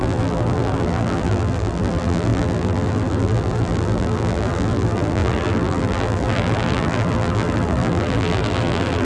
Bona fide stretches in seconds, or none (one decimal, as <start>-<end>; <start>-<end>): none